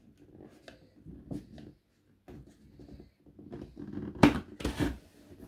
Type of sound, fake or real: real